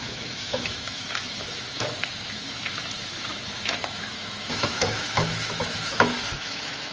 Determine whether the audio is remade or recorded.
remade